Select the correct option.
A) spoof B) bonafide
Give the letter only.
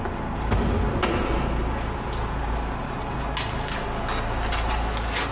B